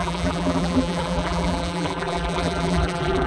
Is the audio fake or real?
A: fake